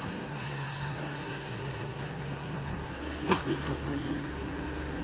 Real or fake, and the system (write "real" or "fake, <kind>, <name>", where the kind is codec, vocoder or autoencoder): fake, codec, SNAC